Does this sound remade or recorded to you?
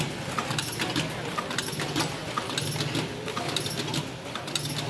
recorded